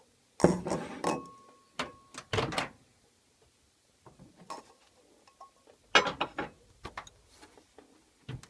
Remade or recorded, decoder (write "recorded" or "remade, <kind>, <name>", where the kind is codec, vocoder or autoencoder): recorded